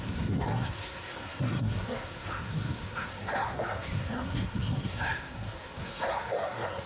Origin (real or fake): fake